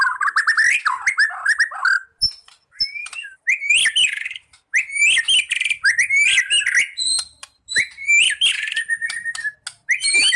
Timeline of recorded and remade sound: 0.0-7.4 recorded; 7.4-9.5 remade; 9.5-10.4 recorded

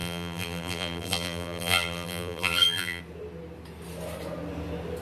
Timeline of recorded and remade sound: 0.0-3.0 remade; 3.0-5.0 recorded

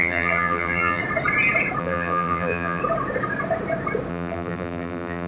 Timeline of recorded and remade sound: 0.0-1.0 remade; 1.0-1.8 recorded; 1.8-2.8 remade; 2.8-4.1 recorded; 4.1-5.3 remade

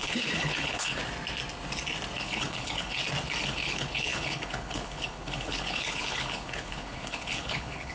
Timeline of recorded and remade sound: 0.0-1.0 remade; 1.0-2.2 recorded; 2.2-3.0 remade; 3.0-3.5 recorded; 3.5-7.9 remade

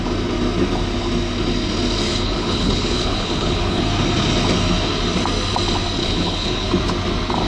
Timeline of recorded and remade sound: 0.0-2.1 recorded; 2.1-3.8 remade; 3.8-6.0 recorded; 6.0-6.7 remade; 6.7-7.5 recorded